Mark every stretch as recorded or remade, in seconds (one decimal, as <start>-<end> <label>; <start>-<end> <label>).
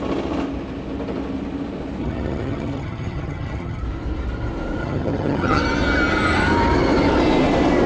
0.0-2.0 recorded; 2.0-3.8 remade; 3.8-4.8 recorded; 4.8-5.6 remade; 5.6-7.9 recorded